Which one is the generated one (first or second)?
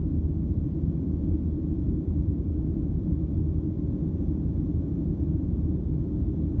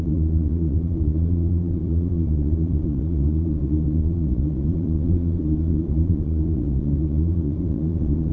second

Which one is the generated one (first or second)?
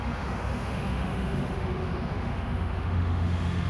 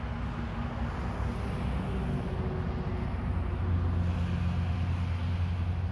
first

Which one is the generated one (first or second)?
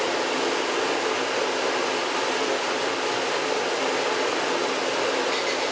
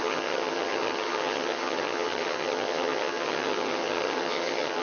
second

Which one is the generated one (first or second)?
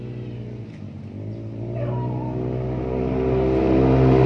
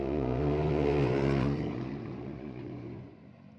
second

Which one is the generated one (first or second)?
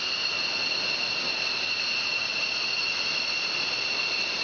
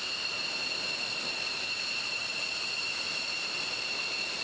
second